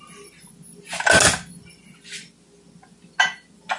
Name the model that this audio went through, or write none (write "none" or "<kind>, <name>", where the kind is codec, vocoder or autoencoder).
none